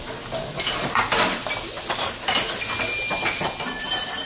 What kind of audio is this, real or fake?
real